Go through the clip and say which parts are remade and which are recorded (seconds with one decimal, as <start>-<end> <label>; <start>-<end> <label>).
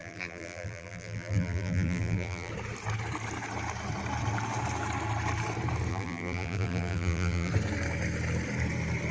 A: 0.0-2.5 remade; 2.5-5.9 recorded; 5.9-7.5 remade; 7.5-9.1 recorded